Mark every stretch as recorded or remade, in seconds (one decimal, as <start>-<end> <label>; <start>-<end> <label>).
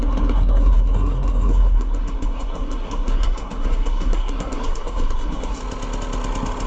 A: 0.0-5.6 remade; 5.6-6.7 recorded